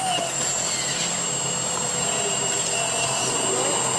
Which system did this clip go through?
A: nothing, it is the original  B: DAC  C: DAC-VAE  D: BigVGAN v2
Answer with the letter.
A